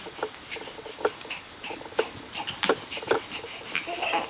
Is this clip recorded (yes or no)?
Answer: yes